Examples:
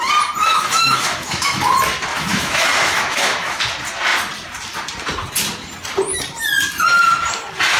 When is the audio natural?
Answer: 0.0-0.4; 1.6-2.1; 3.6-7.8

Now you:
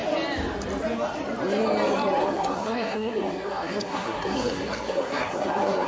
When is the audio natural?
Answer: 0.0-2.2

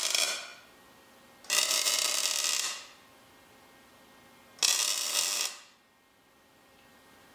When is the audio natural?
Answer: 0.0-7.3

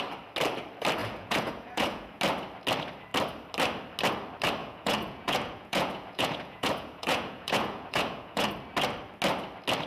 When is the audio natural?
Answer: 0.0-1.0; 2.2-4.6; 8.5-9.9

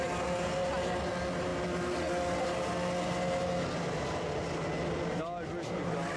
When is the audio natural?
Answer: 0.0-6.2